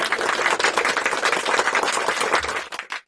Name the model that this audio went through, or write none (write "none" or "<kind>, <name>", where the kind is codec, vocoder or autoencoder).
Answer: none